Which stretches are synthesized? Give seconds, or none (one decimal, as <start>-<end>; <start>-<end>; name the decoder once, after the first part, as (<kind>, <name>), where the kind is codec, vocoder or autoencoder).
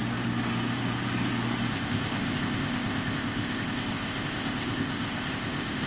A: 1.7-5.9 (codec, ZipCodec)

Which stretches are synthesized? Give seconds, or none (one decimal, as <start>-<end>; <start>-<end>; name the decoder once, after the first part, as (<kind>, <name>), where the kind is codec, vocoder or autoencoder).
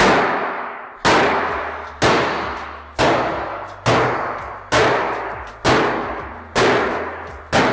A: none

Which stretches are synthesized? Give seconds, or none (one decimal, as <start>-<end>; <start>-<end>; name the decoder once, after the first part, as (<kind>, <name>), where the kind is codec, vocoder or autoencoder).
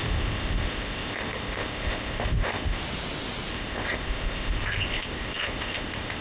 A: 0.0-2.8 (codec, ZipCodec); 3.5-6.2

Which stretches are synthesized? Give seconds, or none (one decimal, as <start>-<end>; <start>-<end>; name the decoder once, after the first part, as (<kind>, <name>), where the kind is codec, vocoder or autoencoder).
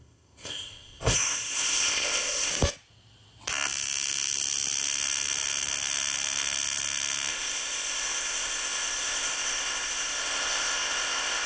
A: 0.0-2.5 (codec, ZipCodec); 7.3-11.5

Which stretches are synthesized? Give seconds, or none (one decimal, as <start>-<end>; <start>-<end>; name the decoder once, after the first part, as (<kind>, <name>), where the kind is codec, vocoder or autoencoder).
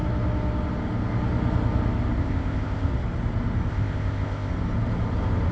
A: 2.2-2.9 (codec, ZipCodec); 3.7-4.5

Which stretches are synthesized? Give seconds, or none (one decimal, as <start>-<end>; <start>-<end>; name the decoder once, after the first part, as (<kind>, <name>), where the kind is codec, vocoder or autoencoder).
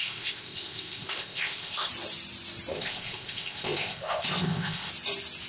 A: 0.0-1.9 (codec, ZipCodec); 2.7-4.9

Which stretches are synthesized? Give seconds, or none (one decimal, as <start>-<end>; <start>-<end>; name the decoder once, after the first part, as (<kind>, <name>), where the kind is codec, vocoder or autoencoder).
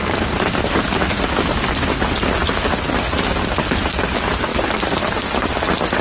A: none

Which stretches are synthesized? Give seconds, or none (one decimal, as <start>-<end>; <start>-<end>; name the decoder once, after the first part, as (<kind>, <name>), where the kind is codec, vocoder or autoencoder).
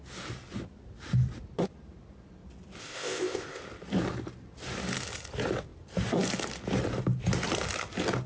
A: 2.8-3.6 (codec, ZipCodec)